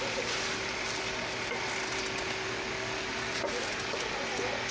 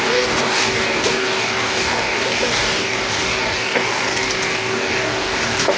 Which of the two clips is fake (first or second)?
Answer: second